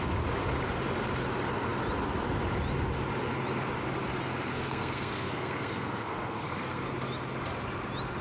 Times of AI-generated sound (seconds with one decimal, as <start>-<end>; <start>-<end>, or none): 4.5-6.9